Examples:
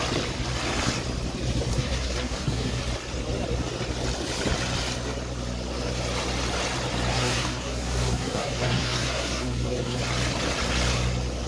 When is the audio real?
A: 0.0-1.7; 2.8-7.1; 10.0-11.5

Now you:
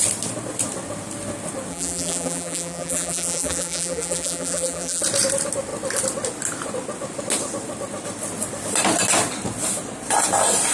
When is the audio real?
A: 0.0-1.7; 5.0-10.7

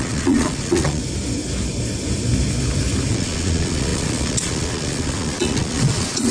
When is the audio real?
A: 1.0-3.1